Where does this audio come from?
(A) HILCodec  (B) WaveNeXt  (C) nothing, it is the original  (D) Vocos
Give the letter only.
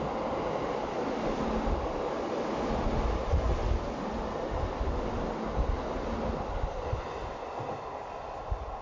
C